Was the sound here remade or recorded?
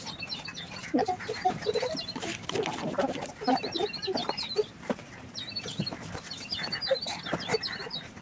remade